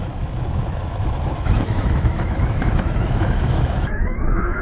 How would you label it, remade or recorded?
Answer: remade